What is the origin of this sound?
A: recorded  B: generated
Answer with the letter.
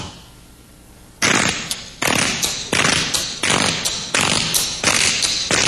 A